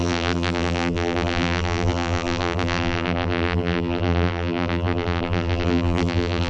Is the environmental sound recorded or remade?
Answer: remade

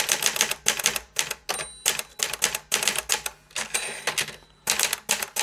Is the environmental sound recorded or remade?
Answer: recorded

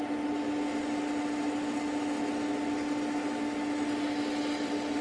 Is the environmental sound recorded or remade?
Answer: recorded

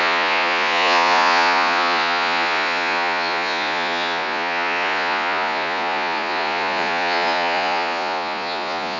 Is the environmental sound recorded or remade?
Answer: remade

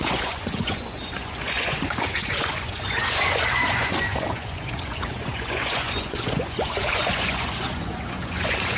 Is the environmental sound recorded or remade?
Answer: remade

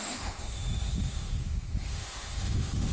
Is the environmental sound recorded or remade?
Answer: remade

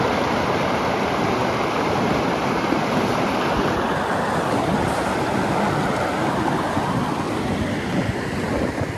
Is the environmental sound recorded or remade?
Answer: recorded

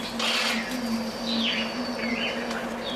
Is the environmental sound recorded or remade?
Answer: recorded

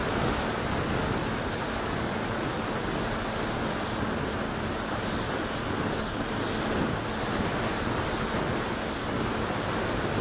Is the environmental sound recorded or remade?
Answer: recorded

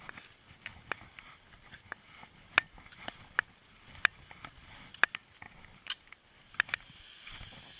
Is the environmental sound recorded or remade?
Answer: recorded